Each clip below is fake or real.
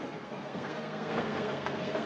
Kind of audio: fake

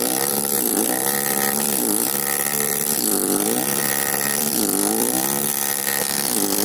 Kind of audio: fake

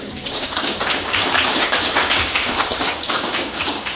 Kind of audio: fake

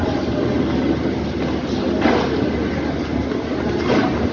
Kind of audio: real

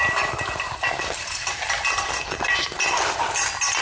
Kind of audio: real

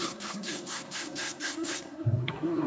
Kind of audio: fake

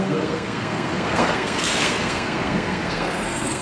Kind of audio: fake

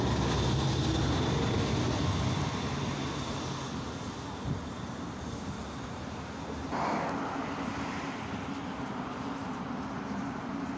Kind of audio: real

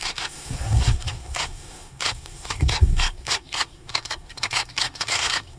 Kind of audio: fake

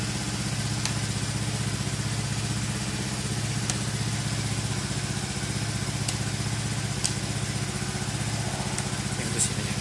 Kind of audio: real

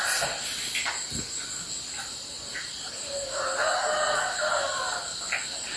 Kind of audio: real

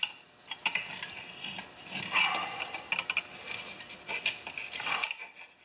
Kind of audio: real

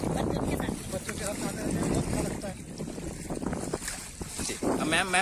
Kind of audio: real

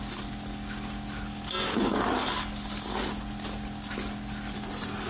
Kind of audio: real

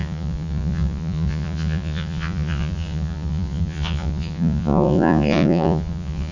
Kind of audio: fake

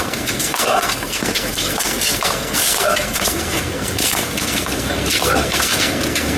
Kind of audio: fake